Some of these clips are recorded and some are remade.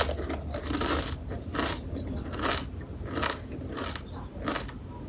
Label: recorded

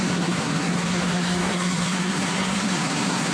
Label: remade